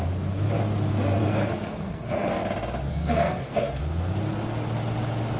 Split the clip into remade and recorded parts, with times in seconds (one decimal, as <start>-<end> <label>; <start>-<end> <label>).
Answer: 0.0-1.2 recorded; 1.2-2.3 remade; 2.3-2.9 recorded; 2.9-3.8 remade; 3.8-5.4 recorded